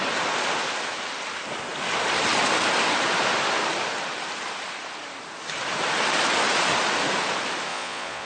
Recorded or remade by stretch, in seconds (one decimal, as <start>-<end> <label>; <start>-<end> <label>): 0.0-7.7 recorded; 7.7-8.3 remade